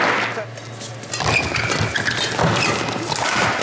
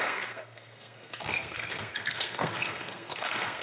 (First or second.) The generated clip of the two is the second